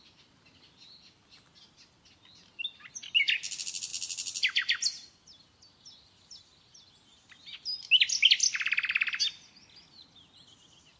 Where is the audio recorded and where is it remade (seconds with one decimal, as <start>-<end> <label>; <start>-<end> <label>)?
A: 0.0-11.0 recorded